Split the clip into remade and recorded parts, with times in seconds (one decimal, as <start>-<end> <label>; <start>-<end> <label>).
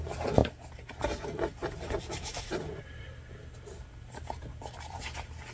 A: 0.0-1.6 recorded; 1.6-3.0 remade; 3.0-5.5 recorded